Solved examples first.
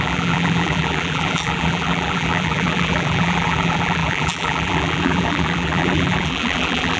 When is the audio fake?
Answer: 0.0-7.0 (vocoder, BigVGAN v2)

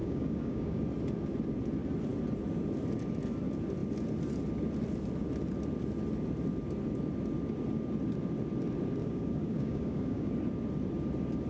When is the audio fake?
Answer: 0.0-0.8 (codec, DAC); 9.0-10.3

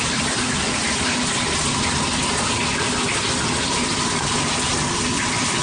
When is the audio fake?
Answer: none

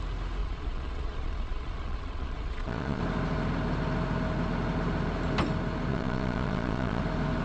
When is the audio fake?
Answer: 0.4-3.0 (vocoder, Vocos); 5.9-7.0

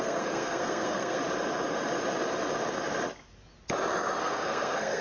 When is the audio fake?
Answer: 0.0-1.2 (codec, SNAC); 4.2-5.0